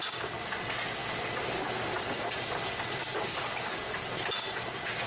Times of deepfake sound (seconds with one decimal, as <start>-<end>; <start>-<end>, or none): none